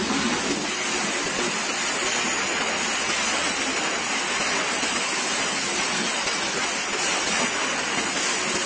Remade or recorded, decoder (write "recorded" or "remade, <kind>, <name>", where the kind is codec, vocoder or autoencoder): recorded